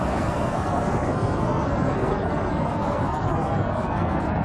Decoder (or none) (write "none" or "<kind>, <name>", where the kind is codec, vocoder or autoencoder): codec, SNAC